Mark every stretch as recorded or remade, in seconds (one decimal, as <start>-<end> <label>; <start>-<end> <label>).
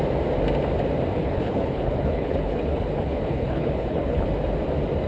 0.0-1.2 recorded; 1.2-4.3 remade; 4.3-5.1 recorded